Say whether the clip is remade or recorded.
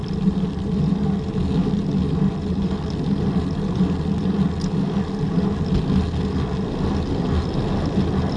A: recorded